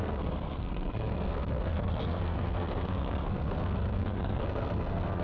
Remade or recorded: remade